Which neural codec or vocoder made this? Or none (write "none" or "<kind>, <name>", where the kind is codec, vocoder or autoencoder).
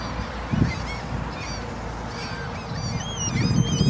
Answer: none